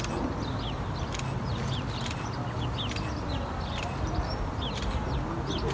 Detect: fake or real real